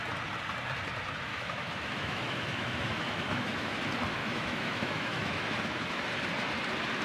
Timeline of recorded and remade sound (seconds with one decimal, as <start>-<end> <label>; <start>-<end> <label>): 0.0-1.3 recorded; 1.3-3.8 remade; 3.8-4.2 recorded; 4.2-6.0 remade; 6.0-7.0 recorded